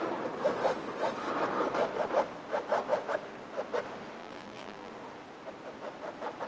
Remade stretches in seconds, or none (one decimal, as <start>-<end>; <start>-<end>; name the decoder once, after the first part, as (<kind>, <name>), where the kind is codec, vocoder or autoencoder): 4.2-4.9 (vocoder, BigVGAN v2)